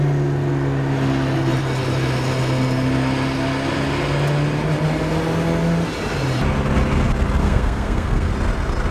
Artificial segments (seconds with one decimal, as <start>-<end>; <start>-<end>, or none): 7.4-8.3